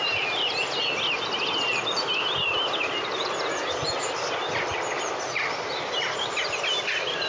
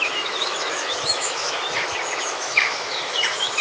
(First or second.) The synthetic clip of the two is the second